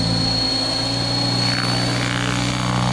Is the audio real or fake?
real